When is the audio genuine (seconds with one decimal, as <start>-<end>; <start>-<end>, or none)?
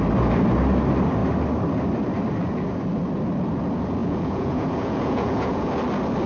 0.0-4.0; 5.7-6.3